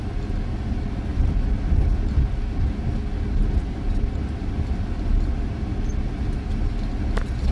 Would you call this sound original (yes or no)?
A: yes